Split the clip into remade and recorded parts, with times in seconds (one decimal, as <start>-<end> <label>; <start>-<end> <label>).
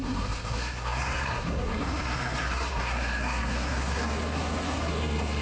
0.0-5.4 remade